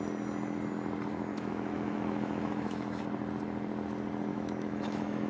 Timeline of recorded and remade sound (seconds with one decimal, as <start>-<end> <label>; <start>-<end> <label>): 0.0-1.3 recorded; 1.3-3.0 remade; 3.0-4.3 recorded; 4.3-5.3 remade